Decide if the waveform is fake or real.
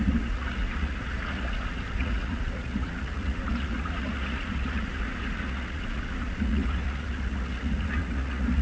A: fake